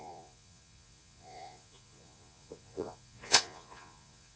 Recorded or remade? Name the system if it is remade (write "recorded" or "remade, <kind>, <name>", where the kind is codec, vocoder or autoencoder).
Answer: remade, vocoder, Vocos